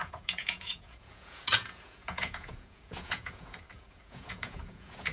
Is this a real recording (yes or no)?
no